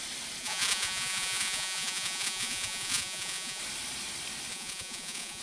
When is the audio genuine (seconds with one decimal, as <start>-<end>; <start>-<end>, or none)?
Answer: 0.0-0.4; 3.6-4.5